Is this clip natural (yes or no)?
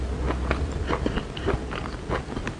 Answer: yes